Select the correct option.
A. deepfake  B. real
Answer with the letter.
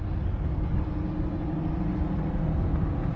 B